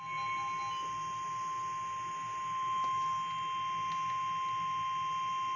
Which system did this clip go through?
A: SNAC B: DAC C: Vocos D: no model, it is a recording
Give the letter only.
D